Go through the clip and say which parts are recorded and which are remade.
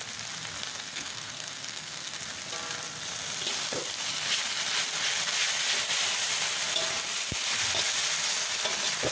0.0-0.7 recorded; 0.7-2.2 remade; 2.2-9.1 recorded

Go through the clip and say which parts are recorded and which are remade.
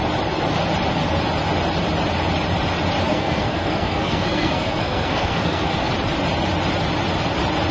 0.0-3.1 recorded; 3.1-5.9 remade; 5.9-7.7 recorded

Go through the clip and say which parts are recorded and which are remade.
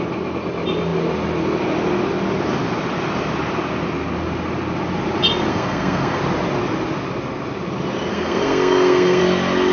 0.0-5.5 recorded; 5.5-6.2 remade; 6.2-8.1 recorded; 8.1-9.2 remade; 9.2-9.7 recorded